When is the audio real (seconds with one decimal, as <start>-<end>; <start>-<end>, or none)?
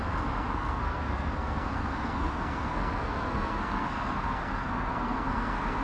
none